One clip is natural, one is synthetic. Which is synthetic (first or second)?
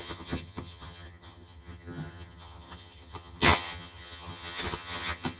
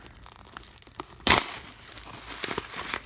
first